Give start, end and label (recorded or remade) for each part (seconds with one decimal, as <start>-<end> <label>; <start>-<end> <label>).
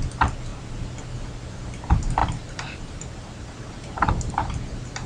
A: 0.0-0.5 recorded; 0.5-1.8 remade; 1.8-2.2 recorded; 2.2-4.3 remade; 4.3-5.1 recorded